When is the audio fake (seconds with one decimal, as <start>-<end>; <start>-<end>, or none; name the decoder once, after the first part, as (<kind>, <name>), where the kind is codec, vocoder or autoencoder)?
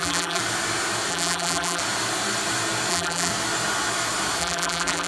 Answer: 0.0-0.4 (vocoder, BigVGAN v2); 1.1-1.8; 2.9-3.3; 4.4-5.1